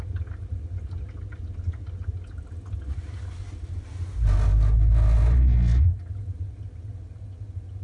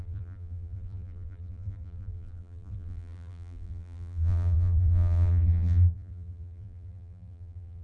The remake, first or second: second